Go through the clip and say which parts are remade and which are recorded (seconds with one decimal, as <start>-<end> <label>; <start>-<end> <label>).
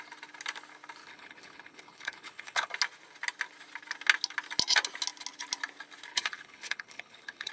0.0-1.0 recorded; 1.0-2.7 remade; 2.7-6.1 recorded; 6.1-7.5 remade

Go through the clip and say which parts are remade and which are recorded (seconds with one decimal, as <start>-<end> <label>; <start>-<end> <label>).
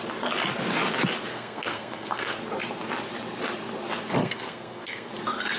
0.0-1.3 recorded; 1.3-2.4 remade; 2.4-4.2 recorded; 4.2-5.1 remade; 5.1-5.6 recorded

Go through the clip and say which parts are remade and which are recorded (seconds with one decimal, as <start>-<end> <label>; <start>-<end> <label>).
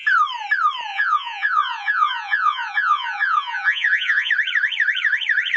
0.0-0.9 recorded; 0.9-4.3 remade; 4.3-5.6 recorded